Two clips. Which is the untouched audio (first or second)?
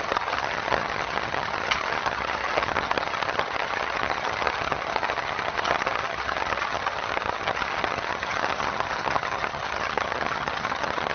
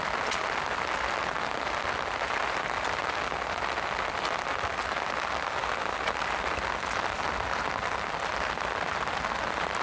second